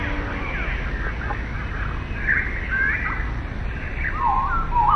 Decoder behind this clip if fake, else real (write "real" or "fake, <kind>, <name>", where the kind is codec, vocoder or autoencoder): real